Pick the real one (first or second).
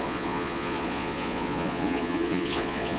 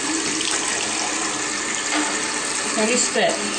second